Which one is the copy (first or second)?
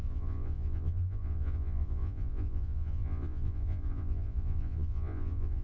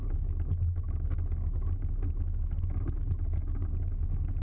first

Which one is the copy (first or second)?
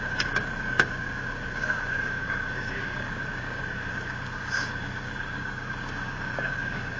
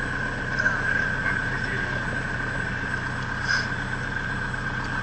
first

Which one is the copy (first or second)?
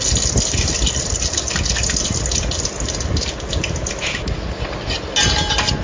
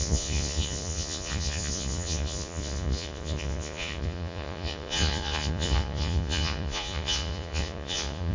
second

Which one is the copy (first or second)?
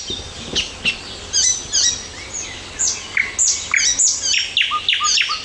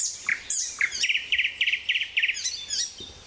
second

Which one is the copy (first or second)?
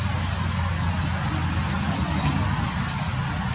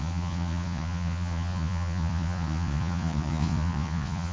second